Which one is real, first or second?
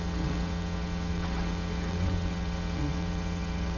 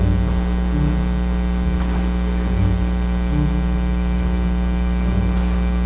second